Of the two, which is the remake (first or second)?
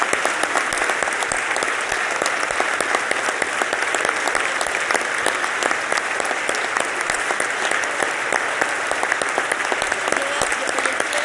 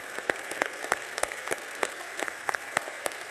second